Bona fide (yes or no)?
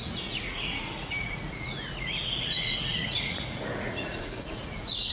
no